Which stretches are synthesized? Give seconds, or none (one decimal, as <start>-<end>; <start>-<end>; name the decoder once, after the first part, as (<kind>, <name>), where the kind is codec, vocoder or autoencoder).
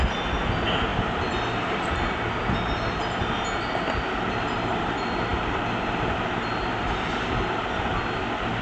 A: none